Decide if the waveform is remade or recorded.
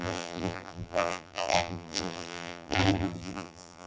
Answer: remade